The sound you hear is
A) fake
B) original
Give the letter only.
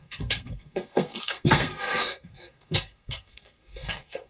A